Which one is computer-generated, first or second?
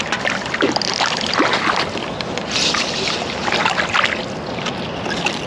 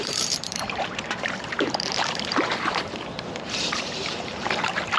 second